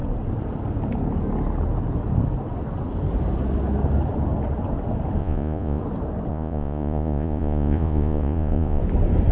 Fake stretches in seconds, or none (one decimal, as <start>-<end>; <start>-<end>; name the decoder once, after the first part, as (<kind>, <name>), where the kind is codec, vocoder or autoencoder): 5.2-5.8 (vocoder, Vocos); 6.3-8.8